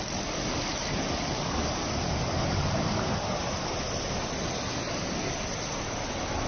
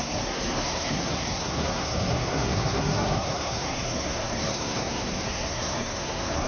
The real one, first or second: first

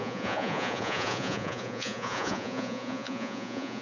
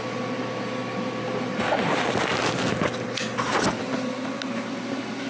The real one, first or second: second